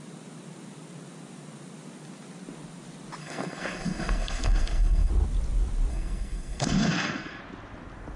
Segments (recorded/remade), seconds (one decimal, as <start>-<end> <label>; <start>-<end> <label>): 0.0-3.2 recorded; 3.2-5.1 remade; 5.1-5.9 recorded; 5.9-7.4 remade; 7.4-8.2 recorded